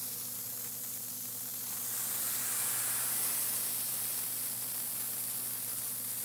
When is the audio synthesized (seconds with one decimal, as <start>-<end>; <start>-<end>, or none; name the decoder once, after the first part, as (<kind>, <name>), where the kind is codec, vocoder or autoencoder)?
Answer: none